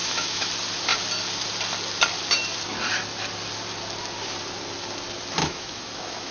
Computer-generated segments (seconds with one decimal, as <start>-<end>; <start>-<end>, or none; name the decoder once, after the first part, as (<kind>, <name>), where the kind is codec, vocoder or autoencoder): 0.0-0.5 (autoencoder, DAC-VAE); 5.4-6.3